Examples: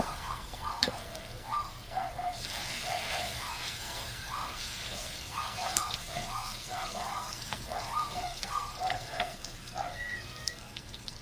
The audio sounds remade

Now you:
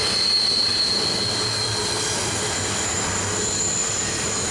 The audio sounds recorded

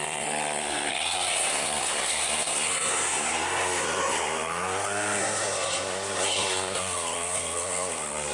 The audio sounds remade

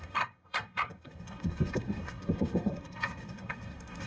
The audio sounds remade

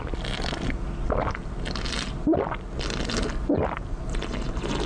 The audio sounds recorded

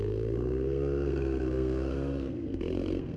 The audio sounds remade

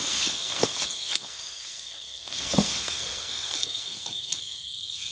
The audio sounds remade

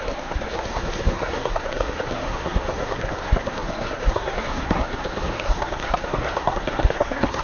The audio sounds remade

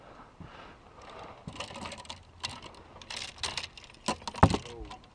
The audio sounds recorded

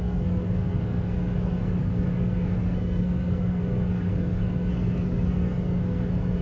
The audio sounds remade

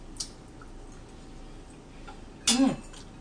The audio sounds recorded